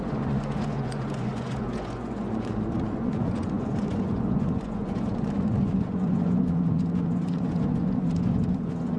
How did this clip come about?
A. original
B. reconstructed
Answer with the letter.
B